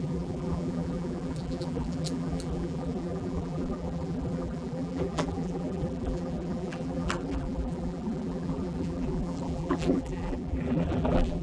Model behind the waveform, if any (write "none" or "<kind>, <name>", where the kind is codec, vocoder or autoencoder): vocoder, BigVGAN v2